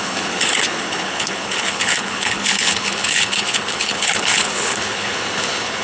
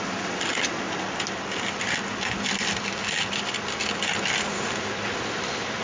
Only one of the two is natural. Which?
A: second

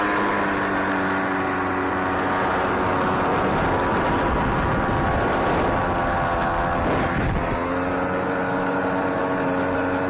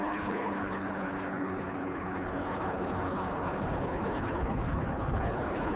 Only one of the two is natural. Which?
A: first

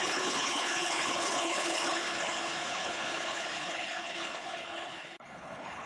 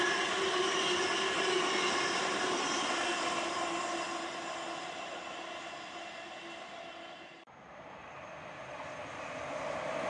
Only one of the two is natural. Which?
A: second